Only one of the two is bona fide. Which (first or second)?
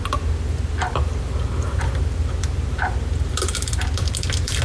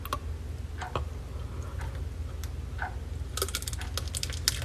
second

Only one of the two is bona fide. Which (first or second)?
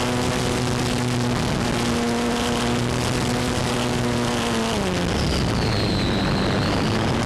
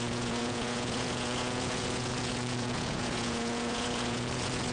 first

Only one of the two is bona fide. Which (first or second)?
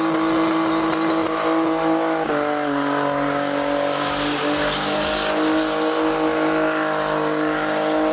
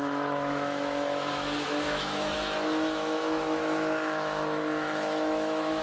first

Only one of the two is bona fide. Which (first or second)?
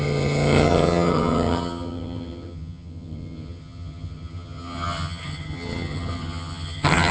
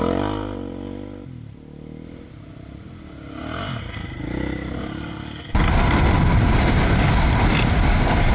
second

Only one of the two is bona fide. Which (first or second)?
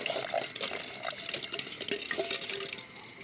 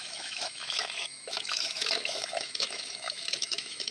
first